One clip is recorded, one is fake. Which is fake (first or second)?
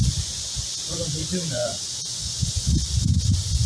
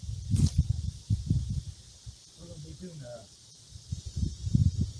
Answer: first